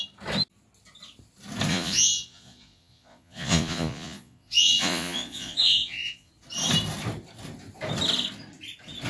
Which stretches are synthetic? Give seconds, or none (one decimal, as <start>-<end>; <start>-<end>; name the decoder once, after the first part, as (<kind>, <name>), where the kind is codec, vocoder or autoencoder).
1.7-6.3 (vocoder, Vocos)